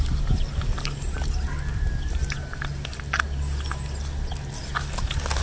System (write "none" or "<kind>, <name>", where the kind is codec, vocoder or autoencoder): none